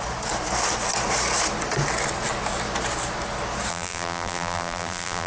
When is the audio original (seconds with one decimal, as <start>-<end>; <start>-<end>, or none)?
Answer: 0.0-3.7